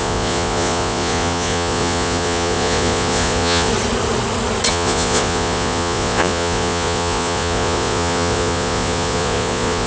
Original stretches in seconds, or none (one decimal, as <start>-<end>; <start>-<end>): 3.7-4.7